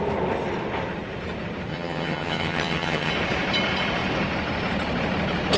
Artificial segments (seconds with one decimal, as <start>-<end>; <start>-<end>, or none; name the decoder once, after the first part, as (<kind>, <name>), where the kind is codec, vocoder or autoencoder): 1.7-3.1 (vocoder, HiFi-GAN)